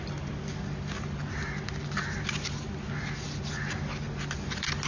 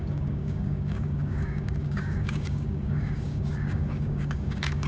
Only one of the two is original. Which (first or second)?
first